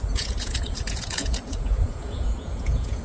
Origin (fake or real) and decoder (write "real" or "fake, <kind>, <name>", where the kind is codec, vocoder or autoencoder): fake, vocoder, Vocos